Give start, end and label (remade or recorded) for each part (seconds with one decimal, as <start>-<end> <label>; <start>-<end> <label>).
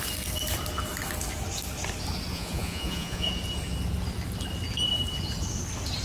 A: 0.0-2.3 recorded; 2.3-3.3 remade; 3.3-6.0 recorded